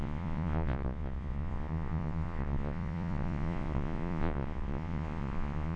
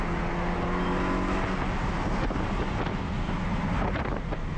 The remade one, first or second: first